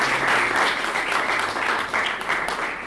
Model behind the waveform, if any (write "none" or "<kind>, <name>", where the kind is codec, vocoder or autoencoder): none